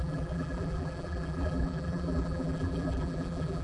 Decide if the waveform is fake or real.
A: fake